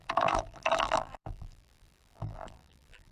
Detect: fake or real fake